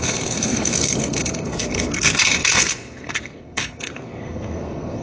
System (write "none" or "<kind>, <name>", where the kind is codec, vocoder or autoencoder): codec, SNAC